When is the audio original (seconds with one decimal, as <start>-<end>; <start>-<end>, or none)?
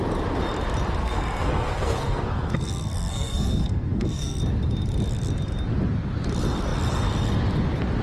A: 0.0-1.0; 4.4-8.0